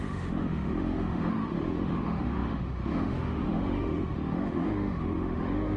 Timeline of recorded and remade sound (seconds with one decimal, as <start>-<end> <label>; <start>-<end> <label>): 0.0-5.8 remade